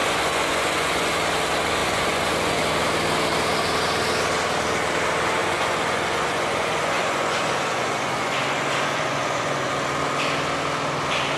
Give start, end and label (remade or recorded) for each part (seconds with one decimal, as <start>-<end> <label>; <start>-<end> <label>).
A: 0.0-1.1 remade; 1.1-1.8 recorded; 1.8-2.6 remade; 2.6-5.4 recorded; 5.4-9.7 remade; 9.7-11.4 recorded